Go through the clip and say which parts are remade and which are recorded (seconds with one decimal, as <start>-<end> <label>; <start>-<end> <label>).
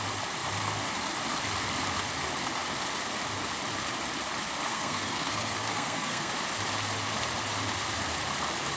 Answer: 0.0-4.7 recorded; 4.7-6.3 remade; 6.3-8.8 recorded